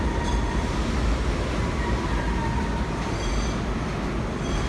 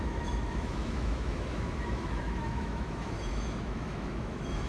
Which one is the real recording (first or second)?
first